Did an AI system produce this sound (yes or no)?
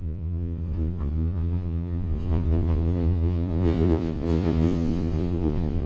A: yes